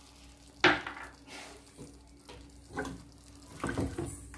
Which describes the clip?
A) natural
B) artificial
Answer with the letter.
A